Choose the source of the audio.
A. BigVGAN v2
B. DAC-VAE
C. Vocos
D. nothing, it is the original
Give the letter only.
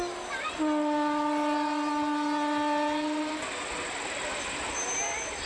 D